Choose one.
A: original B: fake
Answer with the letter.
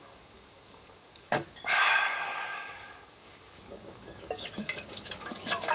B